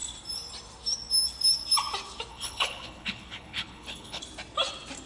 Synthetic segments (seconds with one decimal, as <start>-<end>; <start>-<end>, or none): 2.3-4.2